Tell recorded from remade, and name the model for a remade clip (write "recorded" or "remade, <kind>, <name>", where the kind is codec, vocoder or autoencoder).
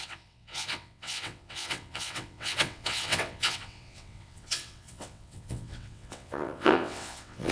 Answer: remade, vocoder, WaveNeXt